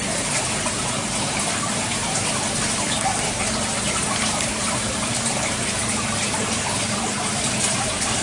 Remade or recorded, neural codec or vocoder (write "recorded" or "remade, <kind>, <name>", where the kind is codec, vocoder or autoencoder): remade, vocoder, BigVGAN v2